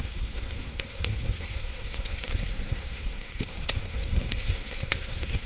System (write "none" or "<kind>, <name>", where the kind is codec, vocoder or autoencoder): codec, SNAC